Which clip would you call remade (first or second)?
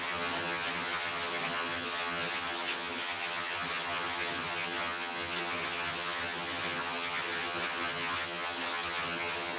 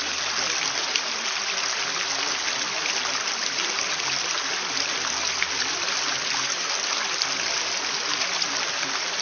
first